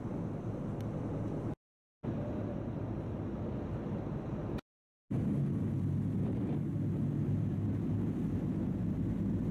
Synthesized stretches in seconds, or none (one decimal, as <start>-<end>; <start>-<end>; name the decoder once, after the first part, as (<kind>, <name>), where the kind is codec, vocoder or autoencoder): none